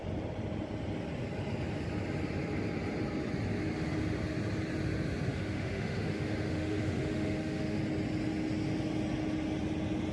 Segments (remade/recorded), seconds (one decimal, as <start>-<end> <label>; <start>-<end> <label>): 0.0-5.3 recorded; 5.3-7.8 remade; 7.8-10.1 recorded